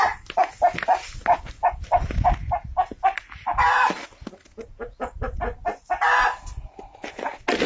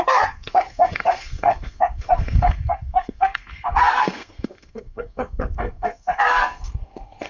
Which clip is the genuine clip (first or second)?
first